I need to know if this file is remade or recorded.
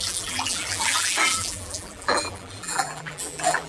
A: remade